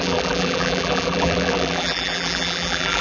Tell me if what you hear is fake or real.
fake